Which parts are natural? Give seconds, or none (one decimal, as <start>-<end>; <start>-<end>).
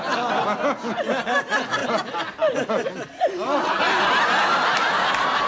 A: 0.0-1.8; 4.1-5.5